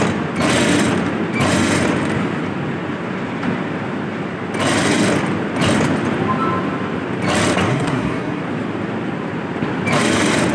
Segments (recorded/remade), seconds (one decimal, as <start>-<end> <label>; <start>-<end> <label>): 0.0-7.7 recorded; 7.7-8.4 remade; 8.4-10.5 recorded